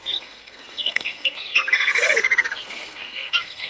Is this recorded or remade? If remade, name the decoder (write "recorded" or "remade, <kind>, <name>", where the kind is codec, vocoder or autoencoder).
remade, codec, SNAC